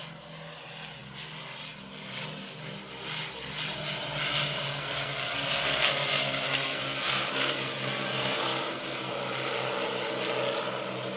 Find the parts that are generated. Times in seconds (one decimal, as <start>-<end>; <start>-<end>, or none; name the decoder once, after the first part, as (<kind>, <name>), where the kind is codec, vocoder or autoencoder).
4.7-9.1 (codec, SNAC)